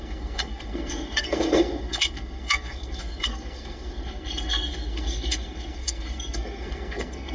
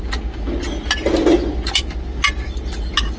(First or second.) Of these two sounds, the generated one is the first